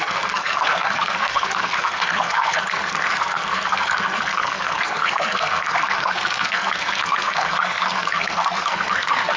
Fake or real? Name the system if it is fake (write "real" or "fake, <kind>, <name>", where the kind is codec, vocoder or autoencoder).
fake, codec, SNAC